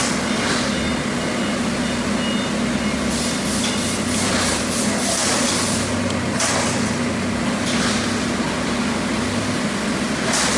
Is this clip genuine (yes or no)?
yes